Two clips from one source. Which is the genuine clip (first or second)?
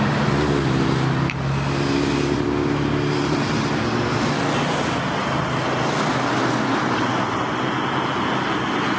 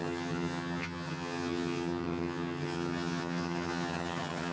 first